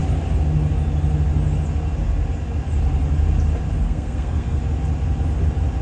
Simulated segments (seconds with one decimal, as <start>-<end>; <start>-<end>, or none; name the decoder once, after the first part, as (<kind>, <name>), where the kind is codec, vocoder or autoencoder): 3.8-4.6 (codec, SNAC)